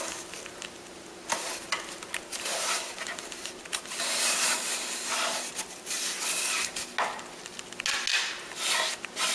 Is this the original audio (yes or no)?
yes